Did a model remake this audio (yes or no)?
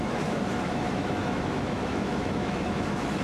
yes